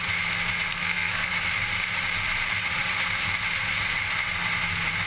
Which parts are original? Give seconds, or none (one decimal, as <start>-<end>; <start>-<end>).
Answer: 0.0-0.7; 1.3-5.1